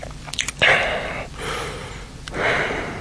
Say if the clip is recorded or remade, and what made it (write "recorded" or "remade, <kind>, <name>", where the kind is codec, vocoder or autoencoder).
recorded